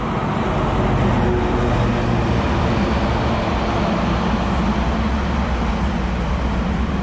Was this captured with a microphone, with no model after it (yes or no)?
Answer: yes